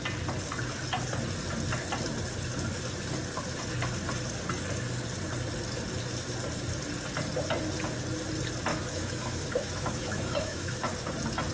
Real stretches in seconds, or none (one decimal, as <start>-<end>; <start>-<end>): 0.0-8.7; 10.8-11.5